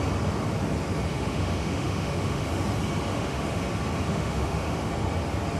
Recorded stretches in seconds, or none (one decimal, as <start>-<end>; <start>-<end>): 0.0-1.1; 2.5-3.1; 3.6-4.1; 4.9-5.6